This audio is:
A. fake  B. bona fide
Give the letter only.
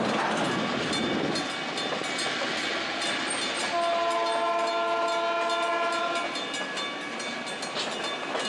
B